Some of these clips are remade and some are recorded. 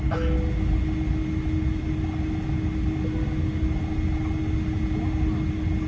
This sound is recorded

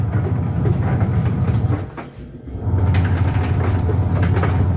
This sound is remade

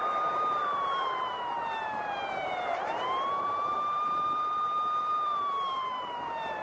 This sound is remade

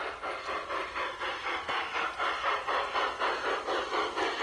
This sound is recorded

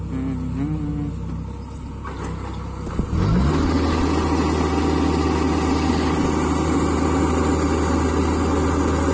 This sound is recorded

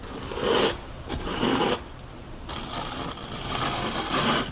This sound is remade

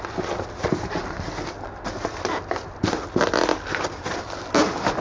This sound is remade